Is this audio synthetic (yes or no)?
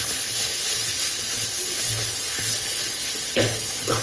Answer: yes